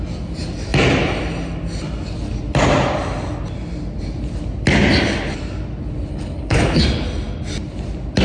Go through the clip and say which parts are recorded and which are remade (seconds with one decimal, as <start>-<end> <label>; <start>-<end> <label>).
0.0-6.1 recorded; 6.1-6.8 remade; 6.8-8.2 recorded